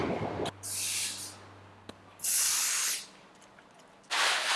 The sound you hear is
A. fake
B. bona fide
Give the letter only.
B